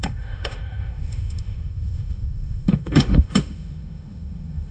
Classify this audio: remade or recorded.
remade